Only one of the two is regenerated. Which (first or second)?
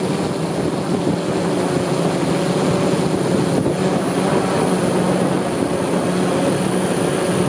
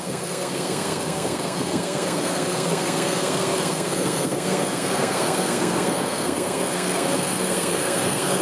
second